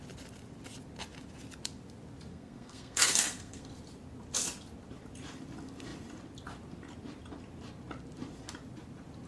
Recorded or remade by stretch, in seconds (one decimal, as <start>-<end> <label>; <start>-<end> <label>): 0.0-2.3 recorded; 2.3-3.7 remade; 3.7-9.3 recorded